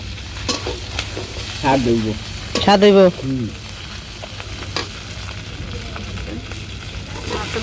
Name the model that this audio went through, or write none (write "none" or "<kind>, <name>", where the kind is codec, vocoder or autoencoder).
none